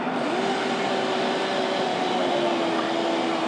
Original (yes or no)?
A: yes